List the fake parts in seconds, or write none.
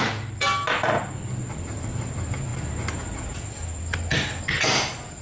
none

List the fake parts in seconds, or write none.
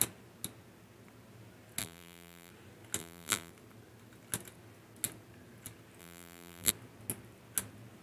1.8-2.5 (vocoder, BigVGAN v2); 3.0-3.5; 6.0-6.7